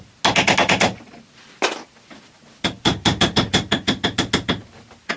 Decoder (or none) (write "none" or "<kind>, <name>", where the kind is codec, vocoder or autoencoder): none